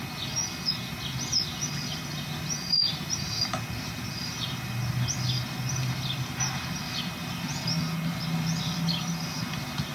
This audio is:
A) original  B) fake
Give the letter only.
A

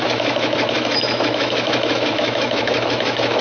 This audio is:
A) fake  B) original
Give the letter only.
A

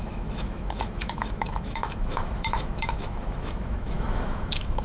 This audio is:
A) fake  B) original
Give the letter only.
A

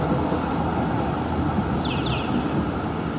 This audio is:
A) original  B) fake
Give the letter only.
A